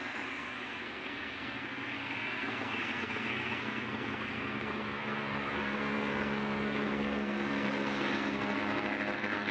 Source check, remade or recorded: remade